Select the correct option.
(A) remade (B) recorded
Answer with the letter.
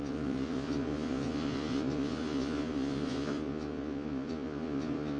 A